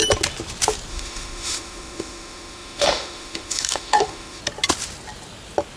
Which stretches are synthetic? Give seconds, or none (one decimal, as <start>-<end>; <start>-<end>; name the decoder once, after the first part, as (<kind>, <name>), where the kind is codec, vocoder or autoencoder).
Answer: 0.9-4.4 (autoencoder, DAC-VAE)